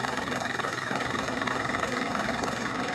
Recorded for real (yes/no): no